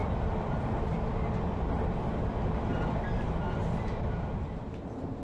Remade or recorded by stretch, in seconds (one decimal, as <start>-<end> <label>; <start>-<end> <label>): 0.0-2.0 remade; 2.0-2.7 recorded; 2.7-4.8 remade; 4.8-5.2 recorded